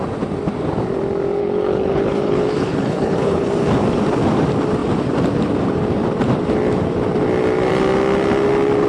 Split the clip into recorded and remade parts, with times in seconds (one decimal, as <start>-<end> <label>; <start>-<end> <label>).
0.0-1.4 recorded; 1.4-3.5 remade; 3.5-8.9 recorded